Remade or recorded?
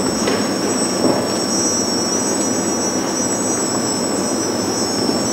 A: recorded